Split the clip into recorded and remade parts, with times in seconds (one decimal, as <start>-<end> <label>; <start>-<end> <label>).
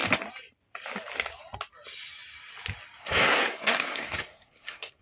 0.0-3.0 recorded; 3.0-5.0 remade